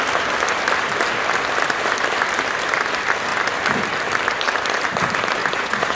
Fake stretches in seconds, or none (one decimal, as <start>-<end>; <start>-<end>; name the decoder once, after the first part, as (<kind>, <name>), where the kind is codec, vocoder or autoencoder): 5.4-6.0 (vocoder, Vocos)